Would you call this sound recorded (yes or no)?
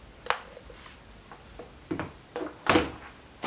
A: yes